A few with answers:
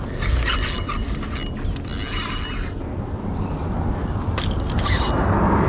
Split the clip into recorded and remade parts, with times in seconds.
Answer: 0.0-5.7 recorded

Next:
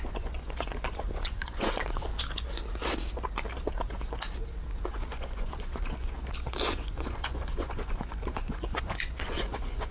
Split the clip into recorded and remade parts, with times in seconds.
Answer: 0.0-2.1 remade; 2.1-4.9 recorded; 4.9-9.9 remade

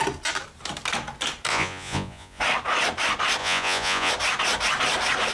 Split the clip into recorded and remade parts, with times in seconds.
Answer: 0.0-1.5 recorded; 1.5-2.4 remade; 2.4-3.4 recorded; 3.4-4.1 remade; 4.1-5.3 recorded

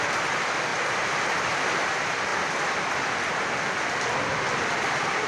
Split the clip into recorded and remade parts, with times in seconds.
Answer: 0.0-5.3 recorded

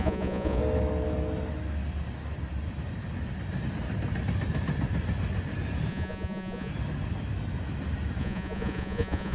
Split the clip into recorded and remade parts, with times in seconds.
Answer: 0.0-0.6 remade; 0.6-5.9 recorded; 5.9-6.7 remade; 6.7-8.2 recorded; 8.2-9.3 remade

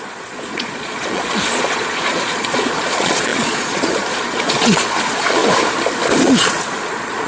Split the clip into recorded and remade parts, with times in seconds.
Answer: 0.0-5.4 remade; 5.4-6.2 recorded; 6.2-7.3 remade

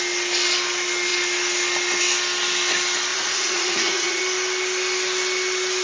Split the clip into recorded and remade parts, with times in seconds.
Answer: 0.0-3.1 recorded; 3.1-4.2 remade; 4.2-5.8 recorded